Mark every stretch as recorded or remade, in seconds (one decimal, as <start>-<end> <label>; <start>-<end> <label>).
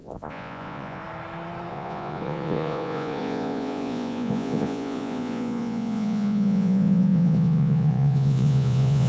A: 0.0-1.0 remade; 1.0-1.7 recorded; 1.7-9.1 remade